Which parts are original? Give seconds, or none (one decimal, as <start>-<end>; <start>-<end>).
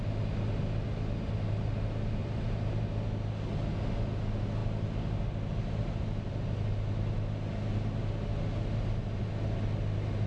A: 0.0-2.2; 2.8-10.3